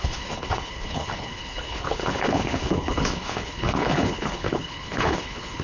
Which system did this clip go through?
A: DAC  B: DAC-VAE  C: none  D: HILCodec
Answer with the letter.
D